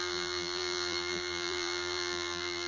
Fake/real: fake